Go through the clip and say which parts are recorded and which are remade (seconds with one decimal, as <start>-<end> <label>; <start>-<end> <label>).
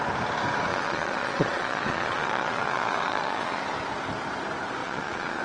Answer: 0.0-0.7 recorded; 0.7-3.6 remade; 3.6-4.8 recorded; 4.8-5.4 remade